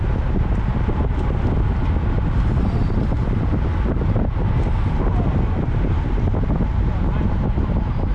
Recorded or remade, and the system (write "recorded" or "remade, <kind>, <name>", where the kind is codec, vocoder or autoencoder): recorded